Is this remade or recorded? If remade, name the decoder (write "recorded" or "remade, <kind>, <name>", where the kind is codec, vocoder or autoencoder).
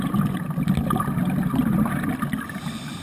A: recorded